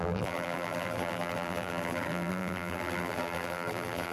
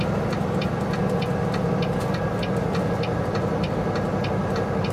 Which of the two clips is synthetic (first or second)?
first